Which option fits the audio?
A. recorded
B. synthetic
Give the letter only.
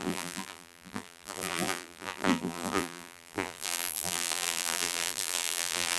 B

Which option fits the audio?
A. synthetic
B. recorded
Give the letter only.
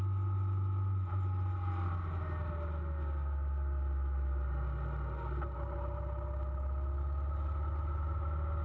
B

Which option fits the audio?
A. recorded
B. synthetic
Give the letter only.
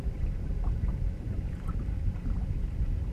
A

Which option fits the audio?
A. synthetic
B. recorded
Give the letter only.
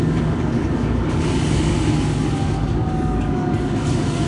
A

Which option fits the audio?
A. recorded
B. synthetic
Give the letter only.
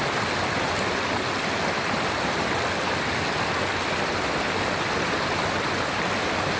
A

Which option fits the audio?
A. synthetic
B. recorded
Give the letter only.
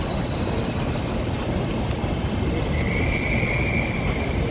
B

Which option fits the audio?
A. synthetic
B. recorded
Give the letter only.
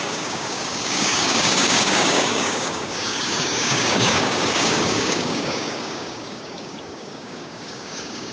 A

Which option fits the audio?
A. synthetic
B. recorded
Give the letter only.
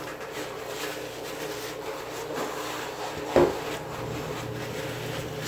B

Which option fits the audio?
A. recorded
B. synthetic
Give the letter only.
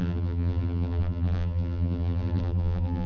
B